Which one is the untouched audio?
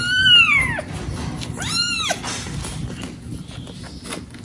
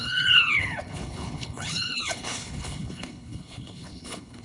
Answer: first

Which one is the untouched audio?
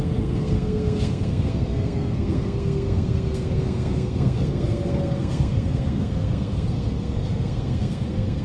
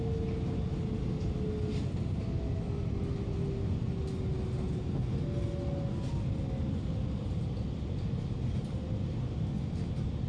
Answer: second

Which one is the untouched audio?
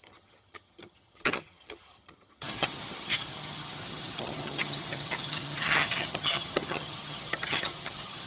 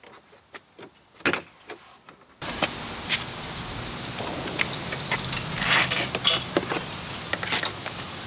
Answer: second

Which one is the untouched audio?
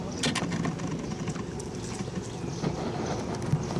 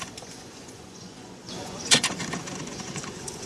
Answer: first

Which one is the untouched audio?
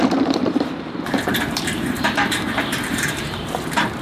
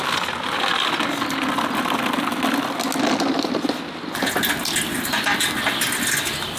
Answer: second